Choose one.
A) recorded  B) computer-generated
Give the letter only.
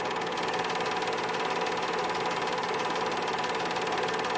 A